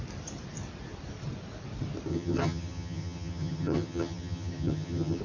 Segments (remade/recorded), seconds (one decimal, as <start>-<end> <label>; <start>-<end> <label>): 0.0-2.1 recorded; 2.1-5.2 remade